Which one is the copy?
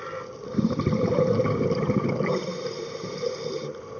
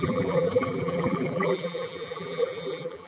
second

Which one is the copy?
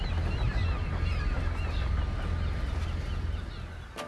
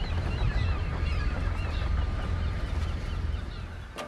second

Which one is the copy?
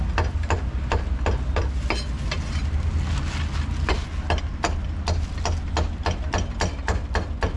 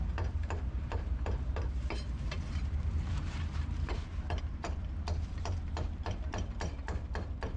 second